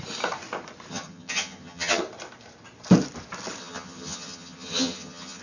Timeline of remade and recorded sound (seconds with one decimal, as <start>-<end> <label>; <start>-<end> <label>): 0.0-0.9 recorded; 0.9-2.0 remade; 2.0-3.6 recorded; 3.6-5.4 remade